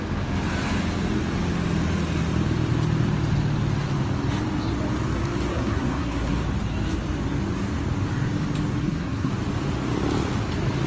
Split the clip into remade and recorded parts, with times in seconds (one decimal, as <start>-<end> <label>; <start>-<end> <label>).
0.0-5.5 recorded; 5.5-6.4 remade; 6.4-8.8 recorded; 8.8-9.3 remade; 9.3-10.9 recorded